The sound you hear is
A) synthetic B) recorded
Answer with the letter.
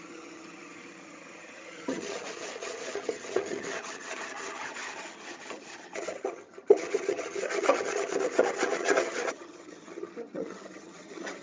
A